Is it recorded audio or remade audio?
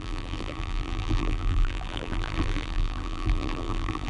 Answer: remade